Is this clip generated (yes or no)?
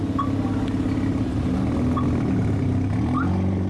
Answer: no